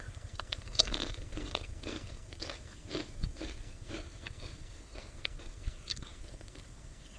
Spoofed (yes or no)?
yes